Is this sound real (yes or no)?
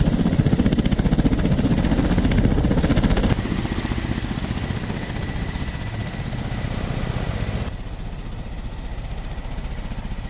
yes